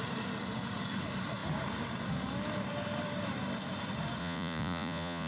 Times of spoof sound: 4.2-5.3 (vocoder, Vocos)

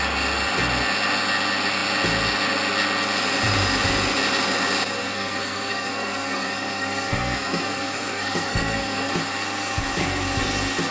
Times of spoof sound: 5.0-9.1 (codec, SNAC)

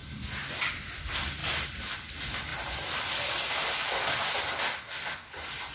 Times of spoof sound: 1.4-2.1 (vocoder, BigVGAN v2); 2.5-3.7